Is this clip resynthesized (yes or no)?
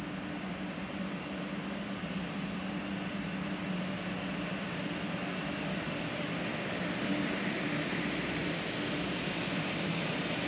no